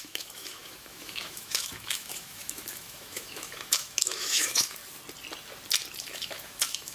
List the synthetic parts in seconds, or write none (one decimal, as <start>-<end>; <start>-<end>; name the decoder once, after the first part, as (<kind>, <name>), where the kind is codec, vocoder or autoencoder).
0.0-4.8 (autoencoder, DAC-VAE); 6.0-6.9